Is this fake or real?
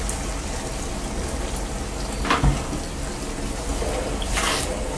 real